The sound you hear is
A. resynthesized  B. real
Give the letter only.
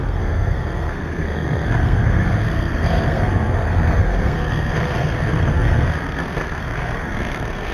A